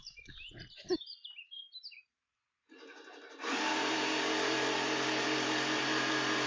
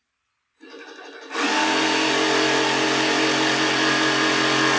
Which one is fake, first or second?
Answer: first